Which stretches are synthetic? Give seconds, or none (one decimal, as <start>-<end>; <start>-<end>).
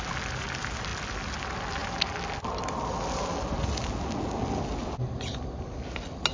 4.8-5.4